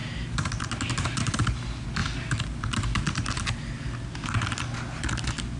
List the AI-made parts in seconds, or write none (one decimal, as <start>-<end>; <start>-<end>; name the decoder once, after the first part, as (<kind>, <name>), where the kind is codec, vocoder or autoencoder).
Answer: none